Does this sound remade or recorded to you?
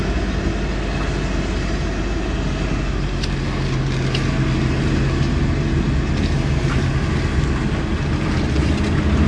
recorded